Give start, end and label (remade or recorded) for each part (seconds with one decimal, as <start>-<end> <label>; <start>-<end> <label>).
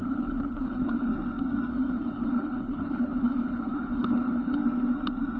0.0-1.1 remade; 1.1-1.7 recorded; 1.7-4.6 remade; 4.6-5.4 recorded